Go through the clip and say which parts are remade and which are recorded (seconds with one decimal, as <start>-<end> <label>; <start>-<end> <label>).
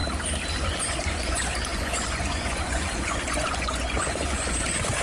0.0-0.5 recorded; 0.5-5.0 remade